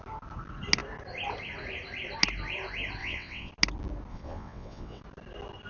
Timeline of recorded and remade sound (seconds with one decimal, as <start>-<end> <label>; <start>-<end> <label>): 0.0-3.0 recorded; 3.0-3.5 remade; 3.5-4.1 recorded; 4.1-5.0 remade; 5.0-5.7 recorded